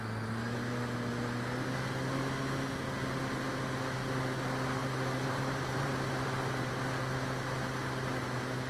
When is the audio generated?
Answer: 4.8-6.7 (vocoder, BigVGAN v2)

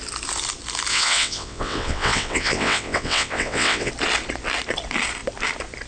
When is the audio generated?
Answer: 0.9-3.9 (vocoder, WaveNeXt)

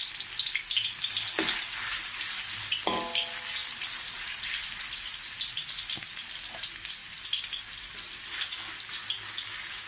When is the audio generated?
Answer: 7.0-8.7 (vocoder, BigVGAN v2)

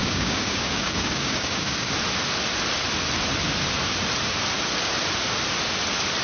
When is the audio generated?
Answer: 0.0-1.9 (codec, DAC)

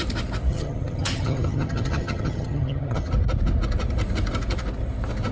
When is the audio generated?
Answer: 0.5-3.1 (vocoder, HiFi-GAN)

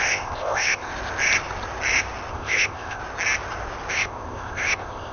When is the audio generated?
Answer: 0.0-0.9 (codec, ZipCodec); 2.3-3.0; 3.9-5.1

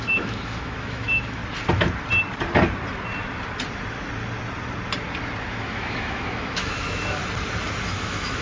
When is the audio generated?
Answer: 0.0-1.4 (autoencoder, DAC-VAE); 5.5-7.2; 7.8-8.4

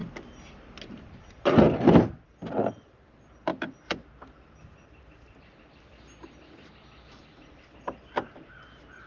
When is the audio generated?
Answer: 3.5-5.4 (vocoder, BigVGAN v2)